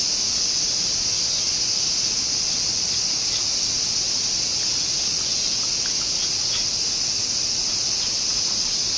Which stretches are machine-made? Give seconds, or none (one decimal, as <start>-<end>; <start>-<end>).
none